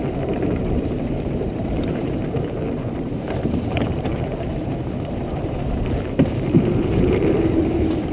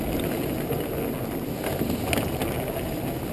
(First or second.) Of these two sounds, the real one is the second